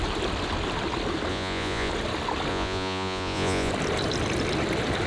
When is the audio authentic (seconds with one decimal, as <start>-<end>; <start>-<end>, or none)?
0.0-1.3; 1.9-2.5; 3.7-5.1